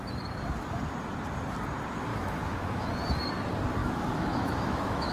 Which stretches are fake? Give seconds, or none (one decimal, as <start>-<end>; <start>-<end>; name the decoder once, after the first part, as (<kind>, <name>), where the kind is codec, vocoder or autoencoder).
2.1-2.9 (autoencoder, DAC-VAE); 3.8-5.1